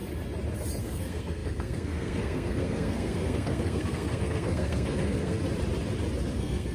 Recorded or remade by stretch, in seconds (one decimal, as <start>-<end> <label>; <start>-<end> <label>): 0.0-0.8 recorded; 0.8-5.4 remade; 5.4-6.3 recorded; 6.3-6.7 remade